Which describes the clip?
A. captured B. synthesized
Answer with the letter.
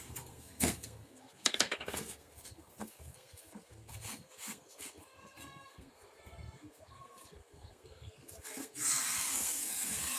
B